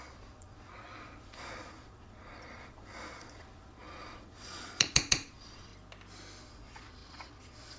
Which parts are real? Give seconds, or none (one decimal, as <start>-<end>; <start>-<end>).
5.7-6.4